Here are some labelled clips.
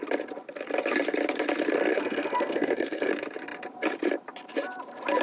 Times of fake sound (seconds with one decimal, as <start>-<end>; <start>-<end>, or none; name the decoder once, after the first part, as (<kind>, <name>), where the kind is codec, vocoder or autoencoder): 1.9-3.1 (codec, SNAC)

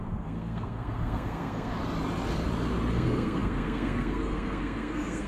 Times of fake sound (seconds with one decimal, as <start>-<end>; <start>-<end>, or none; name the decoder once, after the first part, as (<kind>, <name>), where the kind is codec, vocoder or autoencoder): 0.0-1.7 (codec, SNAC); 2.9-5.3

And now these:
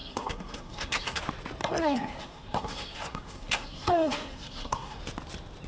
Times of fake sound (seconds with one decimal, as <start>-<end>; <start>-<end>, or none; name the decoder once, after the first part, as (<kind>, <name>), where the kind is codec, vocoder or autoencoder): 0.0-1.2 (codec, SNAC); 1.6-5.0

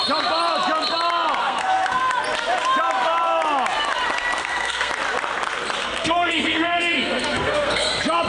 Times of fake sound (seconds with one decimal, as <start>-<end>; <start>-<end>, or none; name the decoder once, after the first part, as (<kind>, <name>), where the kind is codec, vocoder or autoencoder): 1.4-2.0 (codec, SNAC); 4.4-4.9; 5.8-7.9

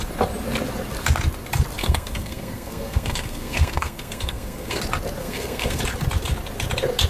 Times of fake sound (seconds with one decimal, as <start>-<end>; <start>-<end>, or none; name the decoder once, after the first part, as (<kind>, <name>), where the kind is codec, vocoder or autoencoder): 1.8-4.8 (codec, SNAC); 5.2-5.8